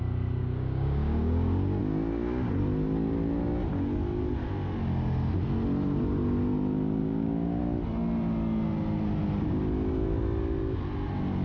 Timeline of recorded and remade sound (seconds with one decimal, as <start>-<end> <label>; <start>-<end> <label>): 0.0-0.4 recorded; 0.4-1.8 remade; 1.8-7.0 recorded; 7.0-7.6 remade; 7.6-11.4 recorded